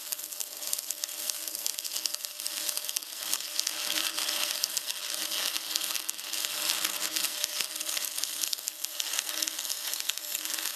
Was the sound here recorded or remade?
remade